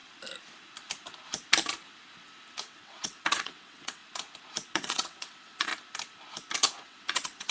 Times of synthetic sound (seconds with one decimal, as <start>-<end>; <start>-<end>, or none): 2.6-4.0; 4.7-5.7; 6.8-7.5